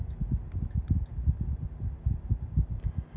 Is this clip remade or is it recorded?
recorded